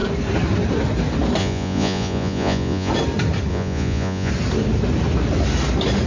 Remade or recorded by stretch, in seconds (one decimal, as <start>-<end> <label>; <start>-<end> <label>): 0.0-1.4 recorded; 1.4-2.9 remade; 2.9-3.5 recorded; 3.5-4.3 remade; 4.3-6.1 recorded